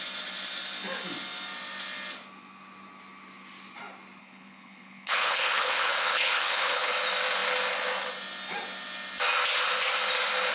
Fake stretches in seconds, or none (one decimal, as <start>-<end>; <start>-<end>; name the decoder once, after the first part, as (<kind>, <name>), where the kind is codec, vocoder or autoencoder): 4.2-6.9 (codec, HILCodec)